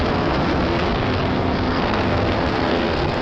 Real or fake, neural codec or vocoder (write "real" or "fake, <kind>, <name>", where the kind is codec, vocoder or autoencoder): fake, codec, SNAC